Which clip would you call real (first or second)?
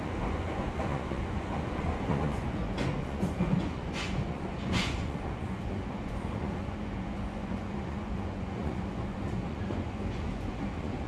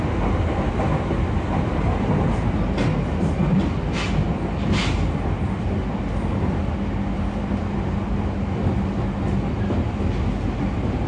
second